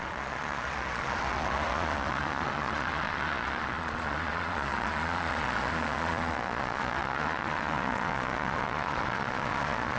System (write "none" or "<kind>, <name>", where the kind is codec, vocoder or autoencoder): vocoder, Vocos